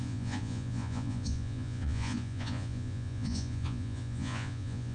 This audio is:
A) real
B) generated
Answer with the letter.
B